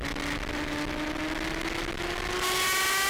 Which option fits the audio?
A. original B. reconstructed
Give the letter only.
A